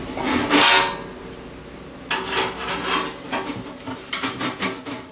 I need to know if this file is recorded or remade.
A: recorded